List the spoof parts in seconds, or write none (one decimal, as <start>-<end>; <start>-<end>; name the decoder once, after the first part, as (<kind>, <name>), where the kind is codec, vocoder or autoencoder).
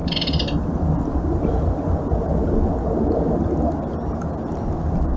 none